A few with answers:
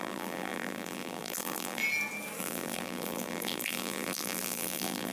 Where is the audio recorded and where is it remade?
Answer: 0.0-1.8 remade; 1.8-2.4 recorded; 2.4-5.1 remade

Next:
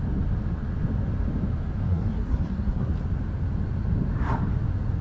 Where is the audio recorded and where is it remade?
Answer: 0.0-1.8 recorded; 1.8-2.9 remade; 2.9-5.0 recorded

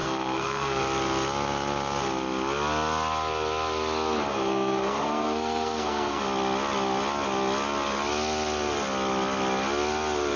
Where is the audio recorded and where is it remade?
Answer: 0.0-0.8 remade; 0.8-4.3 recorded; 4.3-6.2 remade; 6.2-10.4 recorded

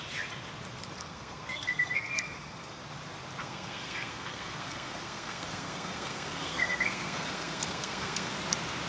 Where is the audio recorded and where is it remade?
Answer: 0.0-1.0 recorded; 1.0-2.8 remade; 2.8-3.4 recorded; 3.4-8.3 remade; 8.3-8.9 recorded

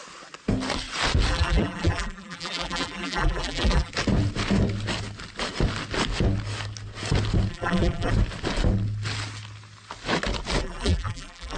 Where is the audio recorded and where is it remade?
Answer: 0.0-1.3 recorded; 1.3-3.9 remade; 3.9-7.5 recorded; 7.5-8.1 remade; 8.1-10.6 recorded; 10.6-11.6 remade

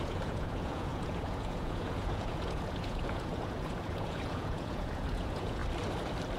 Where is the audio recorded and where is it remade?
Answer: 0.0-5.6 remade; 5.6-6.4 recorded

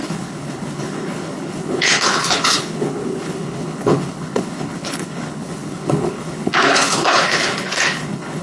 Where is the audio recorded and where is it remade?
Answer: 0.0-8.4 remade